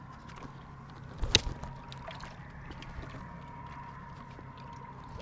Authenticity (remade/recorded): recorded